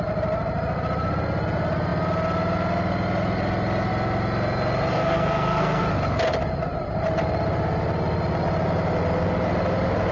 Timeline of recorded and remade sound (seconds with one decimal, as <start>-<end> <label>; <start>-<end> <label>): 0.0-4.9 recorded; 4.9-5.8 remade; 5.8-10.1 recorded